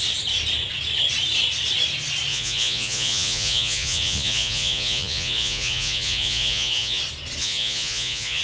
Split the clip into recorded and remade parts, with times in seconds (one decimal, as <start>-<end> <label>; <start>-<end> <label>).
0.0-2.3 recorded; 2.3-7.0 remade; 7.0-7.4 recorded; 7.4-8.4 remade